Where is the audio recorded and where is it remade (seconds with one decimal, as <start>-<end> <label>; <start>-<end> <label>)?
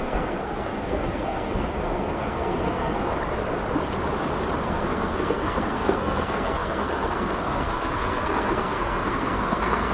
0.0-3.1 remade; 3.1-4.6 recorded; 4.6-9.9 remade